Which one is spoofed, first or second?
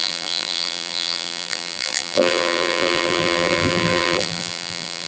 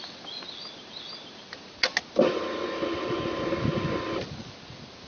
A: first